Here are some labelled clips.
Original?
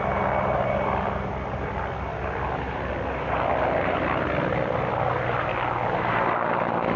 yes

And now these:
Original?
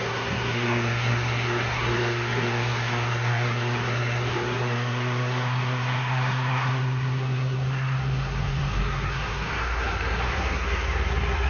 no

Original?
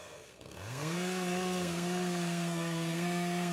no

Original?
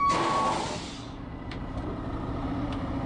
yes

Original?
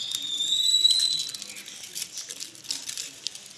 yes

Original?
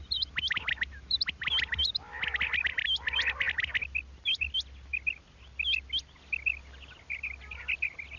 yes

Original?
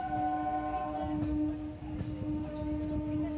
yes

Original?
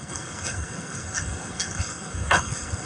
no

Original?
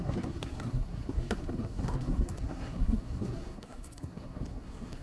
no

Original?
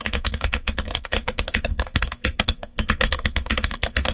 no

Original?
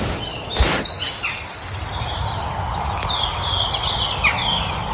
yes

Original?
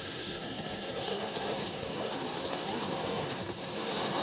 no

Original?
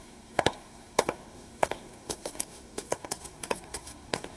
no